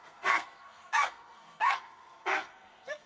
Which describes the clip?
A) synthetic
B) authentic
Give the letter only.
A